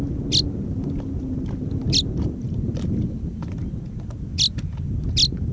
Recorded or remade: recorded